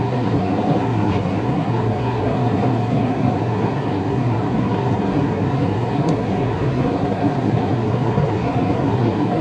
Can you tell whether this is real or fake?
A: fake